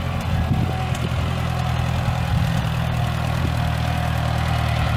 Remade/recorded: recorded